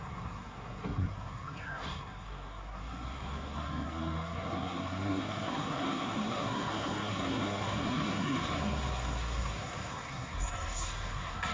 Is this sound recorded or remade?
remade